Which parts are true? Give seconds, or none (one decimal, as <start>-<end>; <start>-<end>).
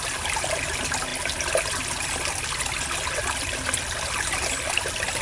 0.0-5.2